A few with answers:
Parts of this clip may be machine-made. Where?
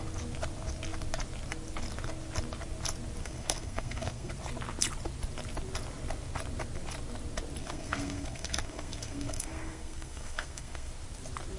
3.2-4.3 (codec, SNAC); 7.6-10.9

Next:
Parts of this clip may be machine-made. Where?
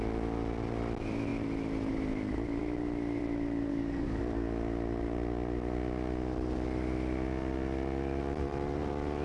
3.7-4.2 (codec, DAC)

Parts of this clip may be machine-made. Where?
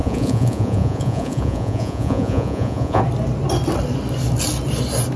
0.0-3.0 (vocoder, Vocos)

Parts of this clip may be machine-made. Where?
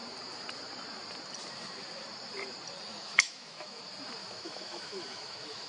2.9-3.8 (autoencoder, DAC-VAE); 4.2-5.7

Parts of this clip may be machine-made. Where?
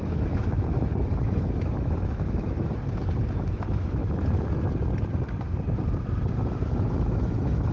0.0-2.8 (autoencoder, DAC-VAE); 3.3-4.0; 6.7-7.7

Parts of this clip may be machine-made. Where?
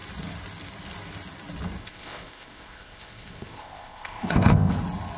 1.8-4.7 (codec, ZipCodec)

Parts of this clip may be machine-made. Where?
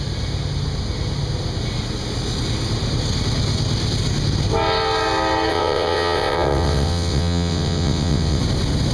5.5-8.4 (vocoder, WaveNeXt)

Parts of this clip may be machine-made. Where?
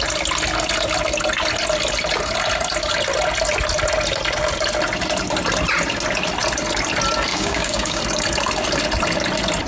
7.3-8.0 (codec, DAC)